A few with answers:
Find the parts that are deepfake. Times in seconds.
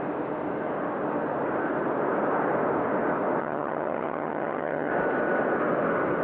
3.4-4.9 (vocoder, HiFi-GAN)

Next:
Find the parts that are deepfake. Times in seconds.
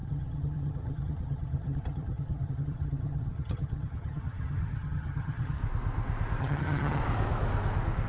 0.0-5.6 (vocoder, HiFi-GAN); 6.4-7.0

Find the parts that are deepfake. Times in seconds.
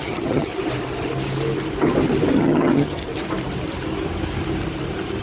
0.0-0.5 (vocoder, HiFi-GAN); 2.3-3.0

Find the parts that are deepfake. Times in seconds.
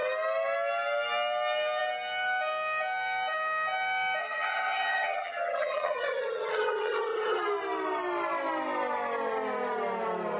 4.2-7.4 (vocoder, HiFi-GAN)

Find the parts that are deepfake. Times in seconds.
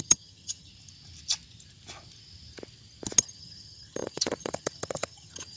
0.0-0.7 (vocoder, HiFi-GAN); 3.2-5.6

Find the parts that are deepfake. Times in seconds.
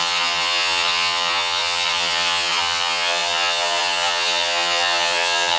0.0-5.6 (vocoder, HiFi-GAN)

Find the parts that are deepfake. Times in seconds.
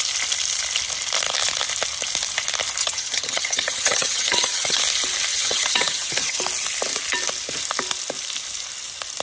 2.8-4.8 (vocoder, HiFi-GAN); 5.3-6.4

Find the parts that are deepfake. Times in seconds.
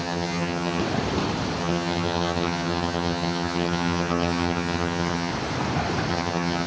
0.0-0.8 (vocoder, HiFi-GAN); 1.6-5.3; 6.1-6.7